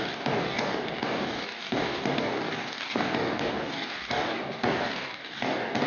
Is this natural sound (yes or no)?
no